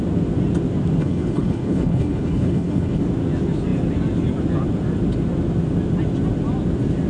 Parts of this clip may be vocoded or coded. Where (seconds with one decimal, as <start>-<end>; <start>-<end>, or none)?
1.0-3.0